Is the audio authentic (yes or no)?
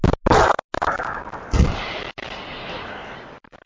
yes